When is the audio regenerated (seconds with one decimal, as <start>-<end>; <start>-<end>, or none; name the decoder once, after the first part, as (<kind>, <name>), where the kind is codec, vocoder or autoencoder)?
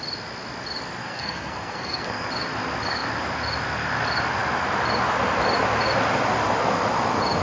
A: 1.0-2.3 (codec, SNAC)